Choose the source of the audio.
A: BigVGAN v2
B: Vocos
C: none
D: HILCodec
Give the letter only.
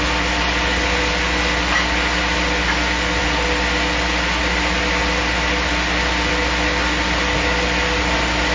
C